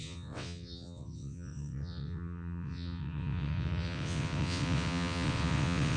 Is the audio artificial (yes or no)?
yes